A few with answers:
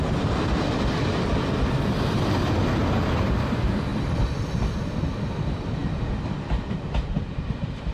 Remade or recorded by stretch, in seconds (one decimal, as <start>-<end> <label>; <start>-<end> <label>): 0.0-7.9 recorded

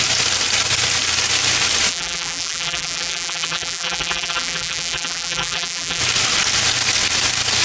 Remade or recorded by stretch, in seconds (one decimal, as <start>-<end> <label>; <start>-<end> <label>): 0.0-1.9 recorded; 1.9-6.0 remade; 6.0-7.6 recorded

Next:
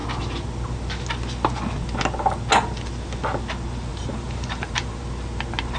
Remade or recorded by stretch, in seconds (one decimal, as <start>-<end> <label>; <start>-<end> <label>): 0.0-3.9 recorded; 3.9-5.0 remade; 5.0-5.8 recorded

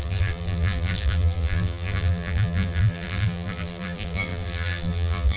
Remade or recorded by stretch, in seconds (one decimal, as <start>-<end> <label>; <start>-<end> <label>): 0.0-5.4 remade

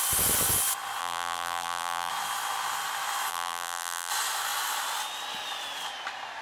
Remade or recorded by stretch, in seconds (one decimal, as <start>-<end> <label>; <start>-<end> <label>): 0.0-1.0 recorded; 1.0-2.1 remade; 2.1-3.3 recorded; 3.3-4.1 remade; 4.1-6.4 recorded

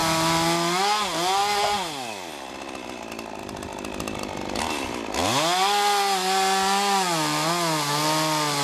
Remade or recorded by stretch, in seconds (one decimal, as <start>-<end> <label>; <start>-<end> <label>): 0.0-8.6 recorded